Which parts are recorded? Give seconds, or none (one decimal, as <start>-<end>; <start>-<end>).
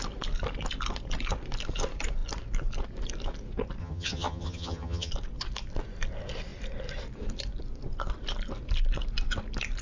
0.0-3.8; 5.1-9.8